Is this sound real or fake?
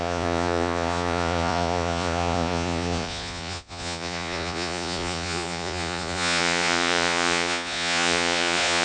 fake